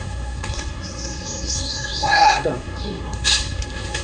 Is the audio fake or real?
fake